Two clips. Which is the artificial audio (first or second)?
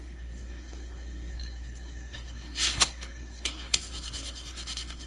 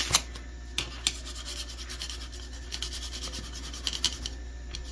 first